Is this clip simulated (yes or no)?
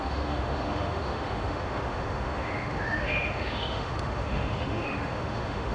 yes